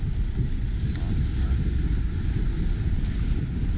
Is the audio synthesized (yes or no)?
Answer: no